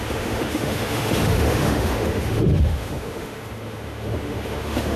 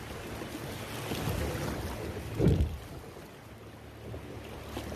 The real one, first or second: second